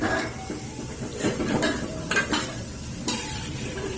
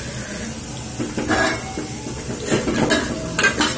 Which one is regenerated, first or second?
first